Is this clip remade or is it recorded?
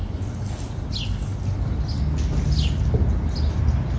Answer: recorded